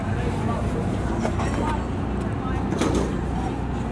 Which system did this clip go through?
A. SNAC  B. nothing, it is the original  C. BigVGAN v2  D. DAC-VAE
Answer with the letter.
B